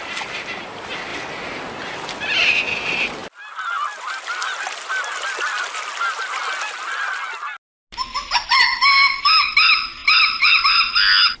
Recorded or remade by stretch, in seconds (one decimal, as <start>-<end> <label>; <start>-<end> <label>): 0.0-10.0 recorded; 10.0-10.6 remade; 10.6-11.4 recorded